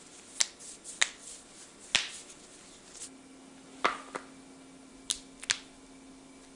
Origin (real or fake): real